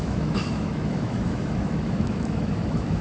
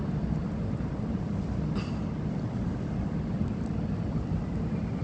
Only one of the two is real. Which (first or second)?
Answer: second